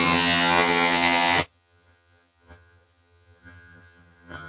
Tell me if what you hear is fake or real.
fake